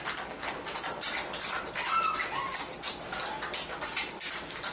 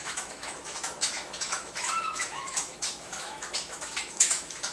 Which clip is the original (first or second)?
first